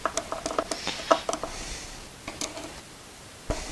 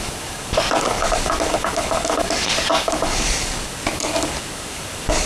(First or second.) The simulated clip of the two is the second